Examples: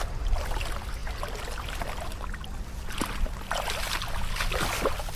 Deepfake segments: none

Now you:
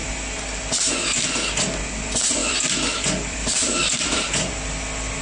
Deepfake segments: 2.4-4.5

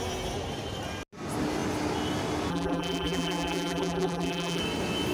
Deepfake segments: 2.5-4.6

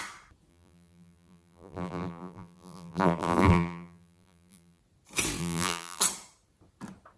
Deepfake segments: 0.5-4.8; 5.4-6.0

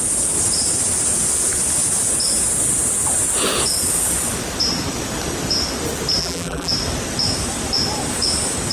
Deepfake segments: 6.2-6.7

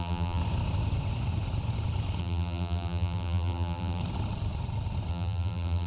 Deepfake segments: 0.0-0.4; 2.2-4.0; 5.1-5.9

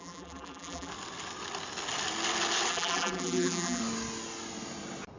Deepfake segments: 0.0-0.9; 2.7-3.8

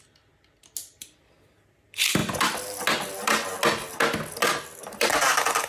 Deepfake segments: none